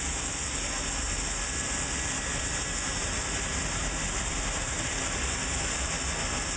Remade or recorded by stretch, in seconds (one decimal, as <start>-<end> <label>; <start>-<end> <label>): 0.0-2.3 recorded; 2.3-4.7 remade; 4.7-6.6 recorded